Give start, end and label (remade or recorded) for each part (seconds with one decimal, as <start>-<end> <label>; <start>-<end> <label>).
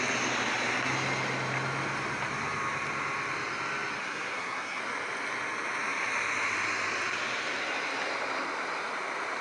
0.0-4.0 recorded; 4.0-4.8 remade; 4.8-9.4 recorded